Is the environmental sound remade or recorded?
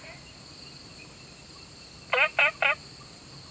recorded